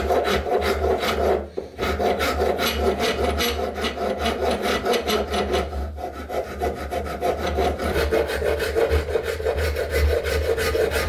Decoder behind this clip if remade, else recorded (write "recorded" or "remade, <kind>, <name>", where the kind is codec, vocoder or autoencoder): recorded